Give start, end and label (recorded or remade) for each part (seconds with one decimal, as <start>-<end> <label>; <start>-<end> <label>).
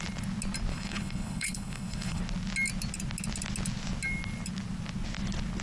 0.0-0.7 recorded; 0.7-2.2 remade; 2.2-5.6 recorded